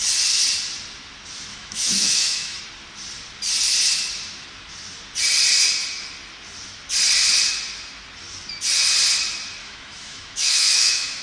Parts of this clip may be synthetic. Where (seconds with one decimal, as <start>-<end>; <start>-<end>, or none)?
1.5-2.6; 9.6-11.2